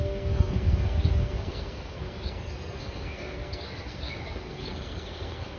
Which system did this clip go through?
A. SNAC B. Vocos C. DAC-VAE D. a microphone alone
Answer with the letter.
A